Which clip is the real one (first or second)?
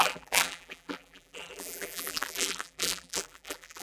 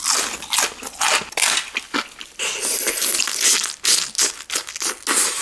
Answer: second